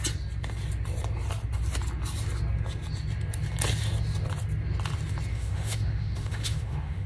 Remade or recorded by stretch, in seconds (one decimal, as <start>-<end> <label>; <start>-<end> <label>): 0.0-5.3 recorded; 5.3-7.1 remade